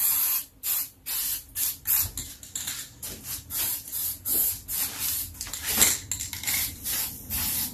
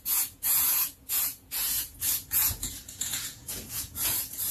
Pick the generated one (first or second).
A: second